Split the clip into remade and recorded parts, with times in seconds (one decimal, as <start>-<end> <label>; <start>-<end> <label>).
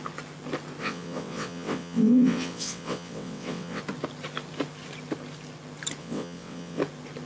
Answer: 0.0-0.8 recorded; 0.8-3.8 remade; 3.8-6.0 recorded; 6.0-6.8 remade; 6.8-7.3 recorded